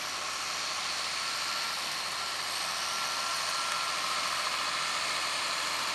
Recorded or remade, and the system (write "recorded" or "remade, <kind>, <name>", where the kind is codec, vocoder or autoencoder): remade, vocoder, BigVGAN v2